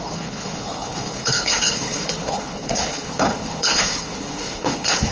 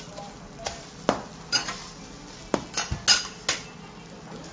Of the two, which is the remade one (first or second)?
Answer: first